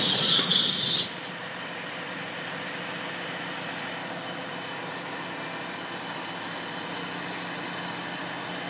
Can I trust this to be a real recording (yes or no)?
yes